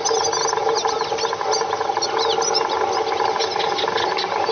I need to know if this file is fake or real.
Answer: real